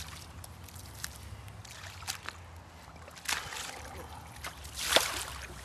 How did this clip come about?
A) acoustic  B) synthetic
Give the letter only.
A